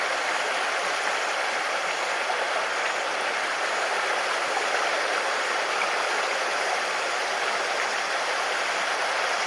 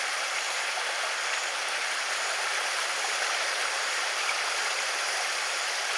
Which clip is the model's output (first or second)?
second